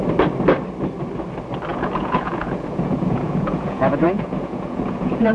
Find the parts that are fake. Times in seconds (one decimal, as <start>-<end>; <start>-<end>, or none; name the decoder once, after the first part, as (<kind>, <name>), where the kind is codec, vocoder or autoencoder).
1.7-5.3 (vocoder, Vocos)